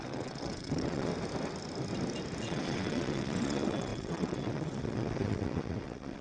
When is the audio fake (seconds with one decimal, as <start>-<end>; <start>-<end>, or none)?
0.0-1.1; 2.4-6.2